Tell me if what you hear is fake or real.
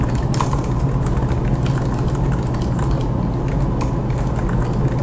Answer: real